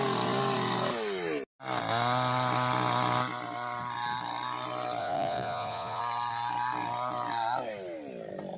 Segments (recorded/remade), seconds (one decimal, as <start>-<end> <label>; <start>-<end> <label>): 0.0-5.0 recorded; 5.0-6.0 remade; 6.0-8.6 recorded